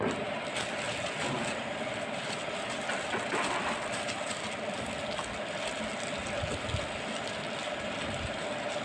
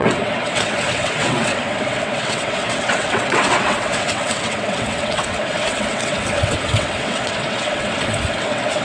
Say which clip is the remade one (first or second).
second